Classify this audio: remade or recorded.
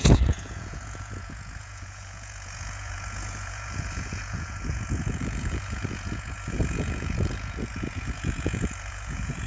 remade